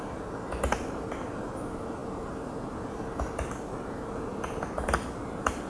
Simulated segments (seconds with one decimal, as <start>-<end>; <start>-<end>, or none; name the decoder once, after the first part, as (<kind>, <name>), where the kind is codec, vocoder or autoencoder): none